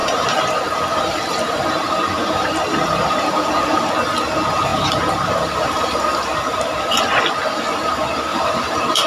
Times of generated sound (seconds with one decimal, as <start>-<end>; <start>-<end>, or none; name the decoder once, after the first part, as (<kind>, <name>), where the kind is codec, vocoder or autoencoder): 0.0-3.9 (vocoder, BigVGAN v2); 4.7-7.0; 8.3-9.1